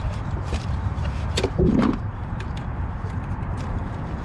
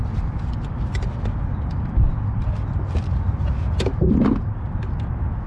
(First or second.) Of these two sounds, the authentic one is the second